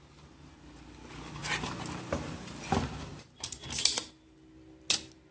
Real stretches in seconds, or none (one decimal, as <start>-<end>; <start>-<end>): 0.0-5.3